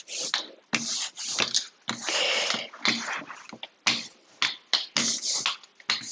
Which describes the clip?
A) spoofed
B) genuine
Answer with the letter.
B